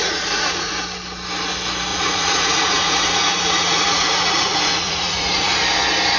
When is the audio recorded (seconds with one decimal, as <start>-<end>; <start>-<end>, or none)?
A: 0.7-1.9; 5.6-6.2